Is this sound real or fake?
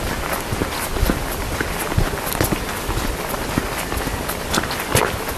real